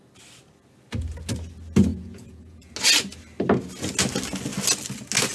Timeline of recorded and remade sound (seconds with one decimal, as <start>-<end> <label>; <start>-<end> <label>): 0.0-1.9 recorded; 1.9-2.7 remade; 2.7-5.3 recorded